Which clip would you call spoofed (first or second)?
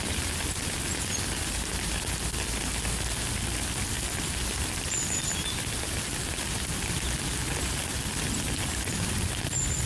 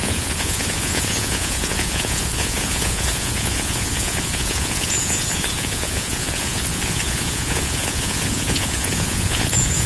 second